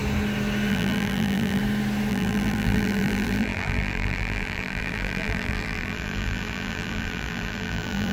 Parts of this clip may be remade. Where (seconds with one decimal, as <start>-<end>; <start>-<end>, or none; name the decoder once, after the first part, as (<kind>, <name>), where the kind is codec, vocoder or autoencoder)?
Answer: 0.7-1.6 (vocoder, BigVGAN v2); 2.1-8.1